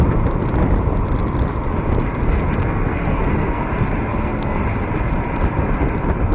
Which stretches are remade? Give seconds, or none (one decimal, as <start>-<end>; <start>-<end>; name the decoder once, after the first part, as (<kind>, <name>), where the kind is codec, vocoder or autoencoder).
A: 2.6-3.6 (codec, SNAC); 4.1-4.6